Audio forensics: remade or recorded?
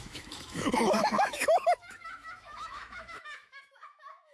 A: remade